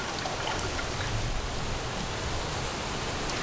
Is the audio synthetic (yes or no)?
no